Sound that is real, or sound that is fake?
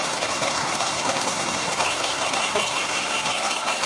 fake